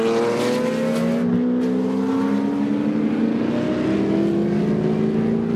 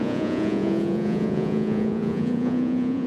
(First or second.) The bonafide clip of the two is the first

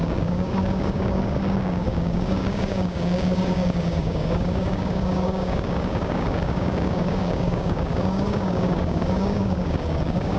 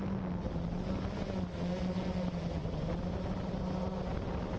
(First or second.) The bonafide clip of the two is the second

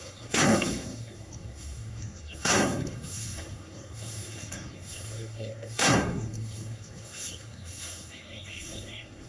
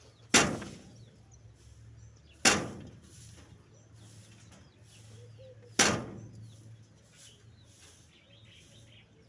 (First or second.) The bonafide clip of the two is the second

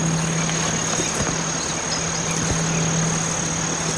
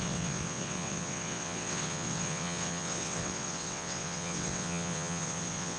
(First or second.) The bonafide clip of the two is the first